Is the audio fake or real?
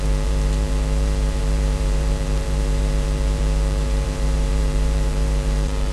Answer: fake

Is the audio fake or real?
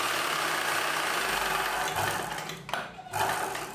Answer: real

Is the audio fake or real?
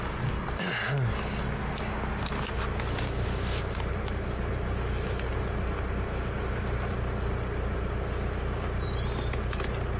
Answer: real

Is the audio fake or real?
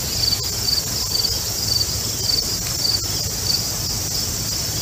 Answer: real